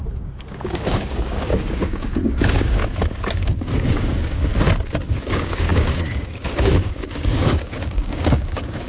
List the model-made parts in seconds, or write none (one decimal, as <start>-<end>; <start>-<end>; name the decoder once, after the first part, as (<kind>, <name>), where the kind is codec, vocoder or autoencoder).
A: 0.0-2.8 (codec, DAC); 3.3-4.5; 5.1-8.9